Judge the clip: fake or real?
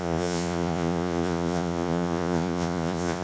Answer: fake